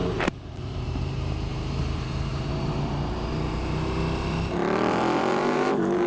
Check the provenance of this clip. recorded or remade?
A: remade